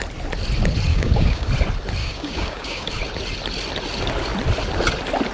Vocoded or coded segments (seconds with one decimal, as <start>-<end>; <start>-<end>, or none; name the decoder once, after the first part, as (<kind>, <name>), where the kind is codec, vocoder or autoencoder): 0.9-1.5 (codec, DAC); 2.0-2.9